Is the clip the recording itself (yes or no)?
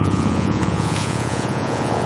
no